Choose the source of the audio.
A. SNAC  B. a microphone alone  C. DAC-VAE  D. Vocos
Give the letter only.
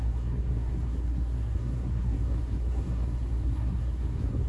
A